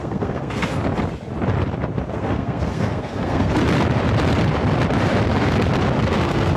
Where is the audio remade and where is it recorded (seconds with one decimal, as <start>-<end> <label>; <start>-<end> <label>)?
0.0-0.8 remade; 0.8-2.1 recorded; 2.1-3.6 remade; 3.6-6.0 recorded; 6.0-6.6 remade